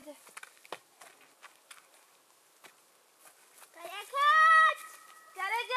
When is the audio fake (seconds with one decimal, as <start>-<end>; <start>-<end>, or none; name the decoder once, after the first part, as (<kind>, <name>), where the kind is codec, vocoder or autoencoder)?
none